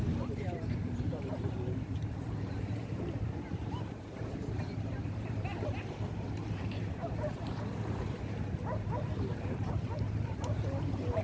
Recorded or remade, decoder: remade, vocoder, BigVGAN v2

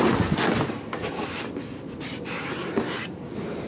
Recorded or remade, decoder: recorded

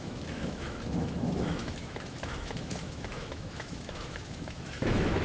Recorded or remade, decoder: remade, autoencoder, DAC-VAE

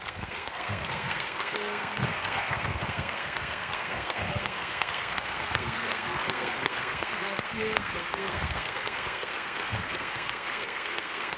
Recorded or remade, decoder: remade, codec, SNAC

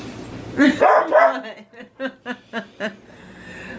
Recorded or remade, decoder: recorded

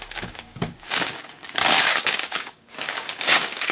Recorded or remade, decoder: remade, codec, DAC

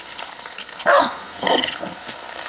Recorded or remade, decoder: remade, codec, SNAC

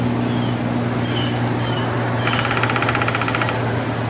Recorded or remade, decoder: recorded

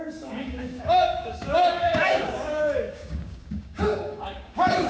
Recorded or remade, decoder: remade, codec, DAC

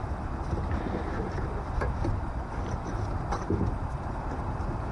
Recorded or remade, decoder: recorded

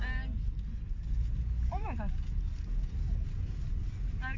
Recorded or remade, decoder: recorded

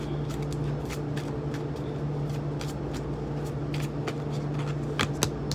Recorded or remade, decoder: recorded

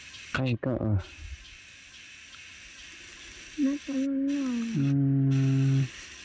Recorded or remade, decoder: recorded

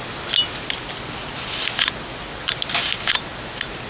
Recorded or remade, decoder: recorded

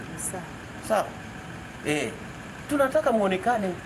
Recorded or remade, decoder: remade, vocoder, BigVGAN v2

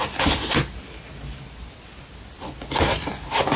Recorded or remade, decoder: recorded